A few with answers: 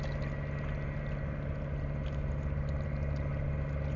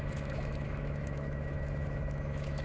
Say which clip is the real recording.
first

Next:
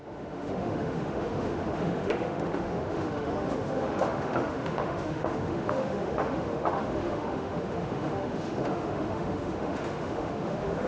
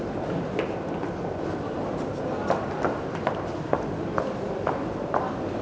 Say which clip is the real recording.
second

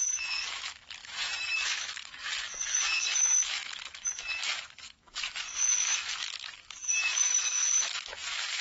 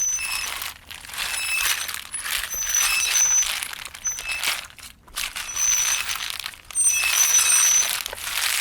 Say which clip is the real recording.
second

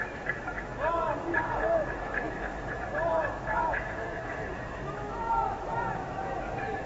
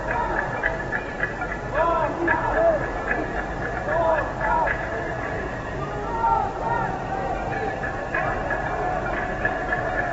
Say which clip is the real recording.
second